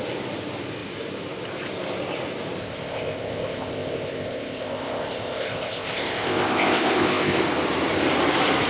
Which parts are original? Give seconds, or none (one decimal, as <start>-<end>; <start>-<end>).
0.0-2.6; 7.4-8.7